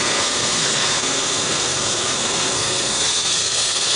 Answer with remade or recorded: remade